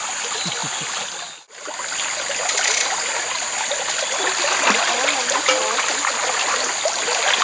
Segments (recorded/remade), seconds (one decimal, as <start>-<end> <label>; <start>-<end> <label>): 0.0-7.4 recorded